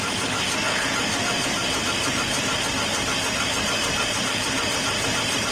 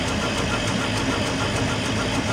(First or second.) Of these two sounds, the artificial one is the first